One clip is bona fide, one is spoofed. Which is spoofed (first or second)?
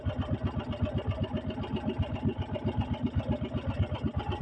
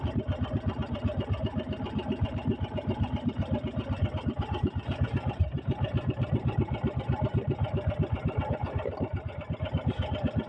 second